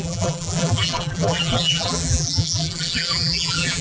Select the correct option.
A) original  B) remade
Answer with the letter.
B